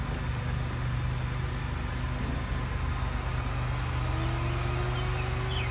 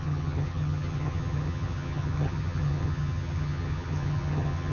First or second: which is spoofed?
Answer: second